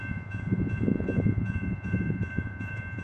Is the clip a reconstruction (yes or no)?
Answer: yes